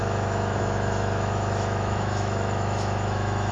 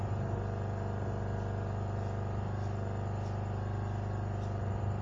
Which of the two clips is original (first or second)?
second